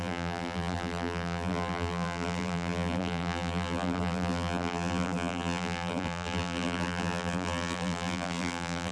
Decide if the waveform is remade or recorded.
remade